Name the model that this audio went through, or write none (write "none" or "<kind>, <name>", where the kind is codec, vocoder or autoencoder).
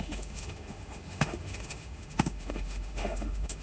autoencoder, DAC-VAE